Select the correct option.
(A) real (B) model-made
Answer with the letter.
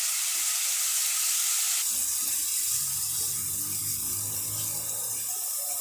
A